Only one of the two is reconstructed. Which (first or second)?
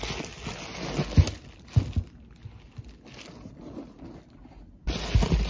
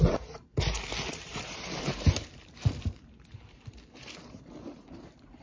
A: second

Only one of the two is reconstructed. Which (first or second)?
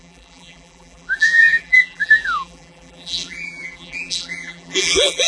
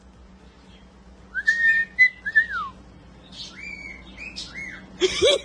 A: first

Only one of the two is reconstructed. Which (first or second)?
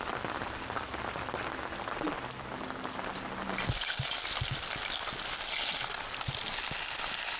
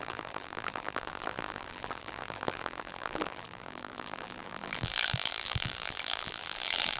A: second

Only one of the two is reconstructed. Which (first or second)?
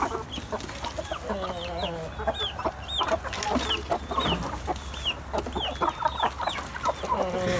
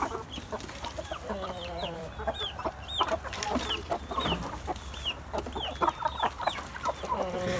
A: second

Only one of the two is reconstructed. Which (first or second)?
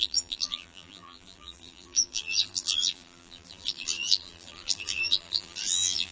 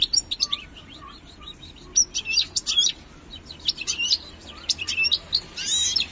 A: first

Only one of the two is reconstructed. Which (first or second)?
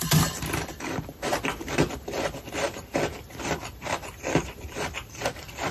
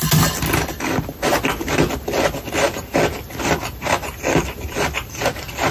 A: first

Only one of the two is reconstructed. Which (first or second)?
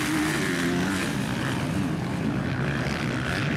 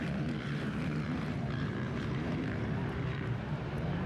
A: second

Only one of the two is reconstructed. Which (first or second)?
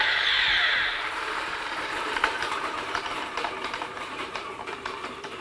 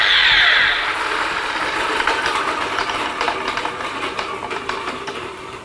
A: first